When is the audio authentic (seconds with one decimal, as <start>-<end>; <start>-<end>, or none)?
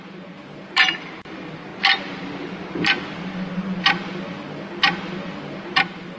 1.7-5.4